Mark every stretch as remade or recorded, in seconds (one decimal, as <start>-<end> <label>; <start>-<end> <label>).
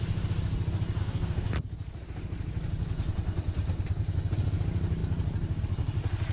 0.0-1.0 recorded; 1.0-1.5 remade; 1.5-6.3 recorded